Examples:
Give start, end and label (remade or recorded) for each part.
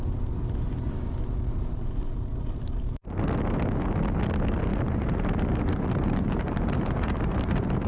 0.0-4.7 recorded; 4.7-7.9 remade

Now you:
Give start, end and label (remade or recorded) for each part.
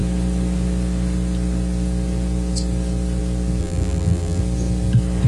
0.0-3.6 recorded; 3.6-4.4 remade; 4.4-5.3 recorded